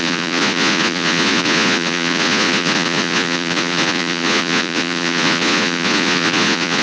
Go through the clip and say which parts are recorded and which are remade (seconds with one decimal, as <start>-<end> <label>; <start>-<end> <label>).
0.0-6.8 remade